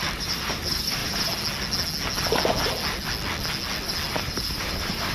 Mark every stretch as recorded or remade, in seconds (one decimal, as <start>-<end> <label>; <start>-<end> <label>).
0.0-1.0 remade; 1.0-4.1 recorded; 4.1-5.1 remade